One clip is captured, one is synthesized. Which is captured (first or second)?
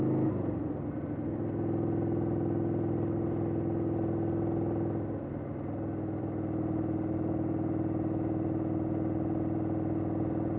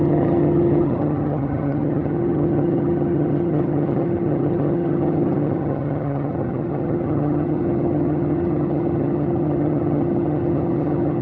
first